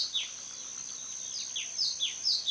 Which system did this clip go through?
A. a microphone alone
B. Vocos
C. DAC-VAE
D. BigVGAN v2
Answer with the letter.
A